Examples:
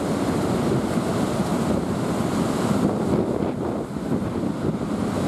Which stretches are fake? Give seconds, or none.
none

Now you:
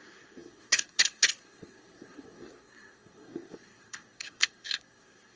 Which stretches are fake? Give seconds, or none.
0.0-5.4 (codec, SNAC)

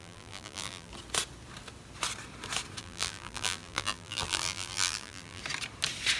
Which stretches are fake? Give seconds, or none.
0.0-0.9 (vocoder, BigVGAN v2); 2.8-5.4

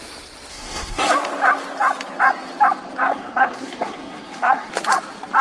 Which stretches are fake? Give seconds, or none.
0.5-1.1 (codec, SNAC); 3.1-4.7

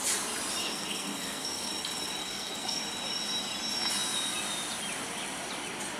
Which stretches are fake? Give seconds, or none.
0.6-1.7 (codec, SNAC); 2.2-2.8

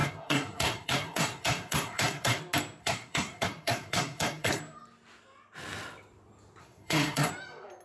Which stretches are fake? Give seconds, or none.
0.0-2.4 (codec, SNAC); 2.8-4.6; 6.6-7.3